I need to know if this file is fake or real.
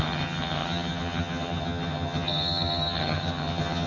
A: fake